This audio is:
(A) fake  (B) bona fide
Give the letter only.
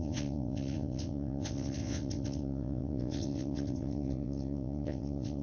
A